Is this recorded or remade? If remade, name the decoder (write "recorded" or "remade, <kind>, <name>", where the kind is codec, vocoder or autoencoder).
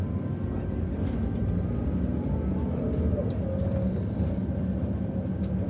recorded